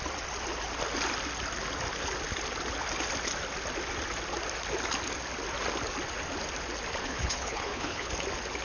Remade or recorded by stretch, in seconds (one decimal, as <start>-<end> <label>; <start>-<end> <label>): 0.0-7.0 recorded; 7.0-8.1 remade; 8.1-8.6 recorded